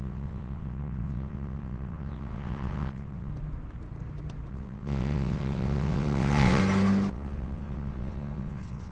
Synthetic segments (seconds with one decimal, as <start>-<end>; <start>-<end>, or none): 0.0-3.3; 4.5-6.6; 7.1-8.9